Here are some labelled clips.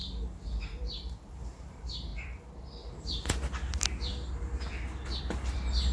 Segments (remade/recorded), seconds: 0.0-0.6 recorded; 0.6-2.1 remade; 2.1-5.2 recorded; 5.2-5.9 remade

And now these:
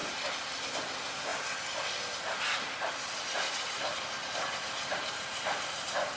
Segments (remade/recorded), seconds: 0.0-0.7 recorded; 0.7-1.3 remade; 1.3-3.5 recorded; 3.5-4.2 remade; 4.2-4.9 recorded; 4.9-6.2 remade

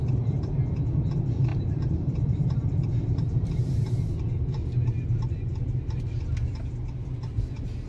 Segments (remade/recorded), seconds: 0.0-1.5 recorded; 1.5-6.2 remade; 6.2-7.9 recorded

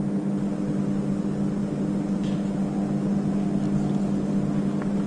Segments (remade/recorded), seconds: 0.0-5.1 recorded

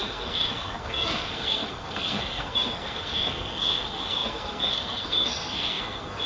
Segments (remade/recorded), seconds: 0.0-6.3 remade

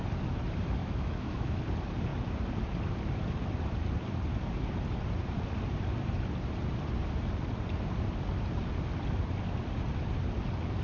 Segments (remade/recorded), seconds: 0.0-0.8 recorded; 0.8-1.6 remade; 1.6-10.8 recorded